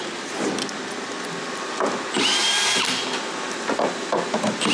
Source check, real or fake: real